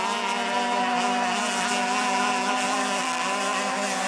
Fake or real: real